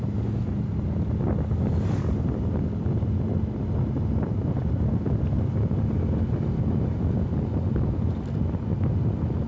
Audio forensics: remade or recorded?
recorded